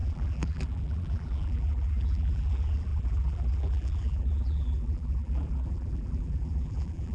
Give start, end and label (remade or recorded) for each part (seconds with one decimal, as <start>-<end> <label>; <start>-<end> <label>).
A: 0.0-7.1 remade